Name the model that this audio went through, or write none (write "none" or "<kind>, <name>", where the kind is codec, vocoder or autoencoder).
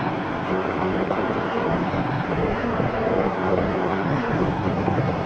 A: codec, SNAC